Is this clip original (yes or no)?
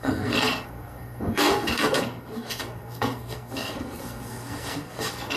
no